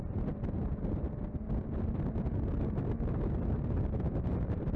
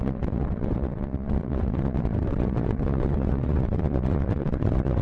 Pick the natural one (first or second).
first